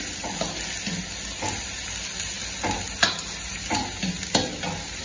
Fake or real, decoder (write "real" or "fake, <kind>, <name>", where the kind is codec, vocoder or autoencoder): real